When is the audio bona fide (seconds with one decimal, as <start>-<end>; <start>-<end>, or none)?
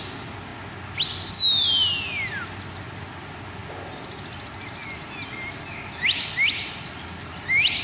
0.0-7.8